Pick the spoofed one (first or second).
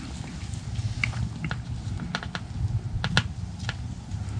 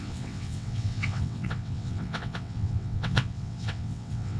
second